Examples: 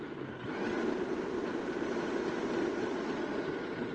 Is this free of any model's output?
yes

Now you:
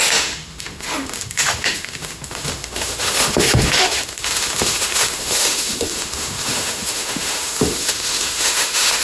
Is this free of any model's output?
no